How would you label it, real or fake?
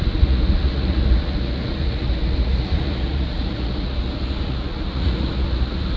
fake